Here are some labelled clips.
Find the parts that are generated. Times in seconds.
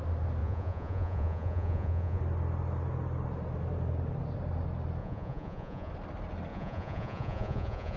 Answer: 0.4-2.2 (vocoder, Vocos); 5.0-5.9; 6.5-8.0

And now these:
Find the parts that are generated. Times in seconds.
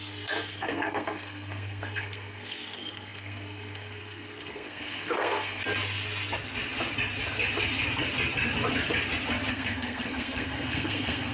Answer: 0.0-5.6 (codec, SNAC); 9.5-11.3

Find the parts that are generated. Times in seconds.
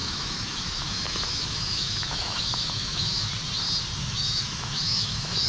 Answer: 0.0-3.3 (autoencoder, DAC-VAE); 4.0-5.5